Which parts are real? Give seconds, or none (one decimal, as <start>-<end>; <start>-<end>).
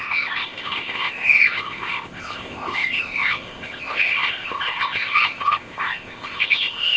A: none